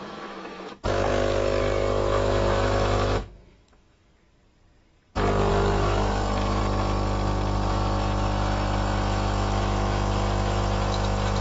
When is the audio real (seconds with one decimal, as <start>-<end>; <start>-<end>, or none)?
4.1-5.5; 6.6-7.7